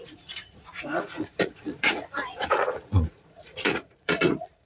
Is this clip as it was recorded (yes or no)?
no